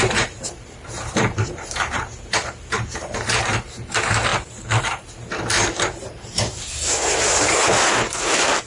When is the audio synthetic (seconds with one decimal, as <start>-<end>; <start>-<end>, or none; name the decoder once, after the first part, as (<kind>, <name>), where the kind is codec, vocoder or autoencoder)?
0.0-4.3 (vocoder, BigVGAN v2); 4.8-8.7